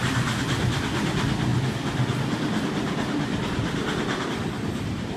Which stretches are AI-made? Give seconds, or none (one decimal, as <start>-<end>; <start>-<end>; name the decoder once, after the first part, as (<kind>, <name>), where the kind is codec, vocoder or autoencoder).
none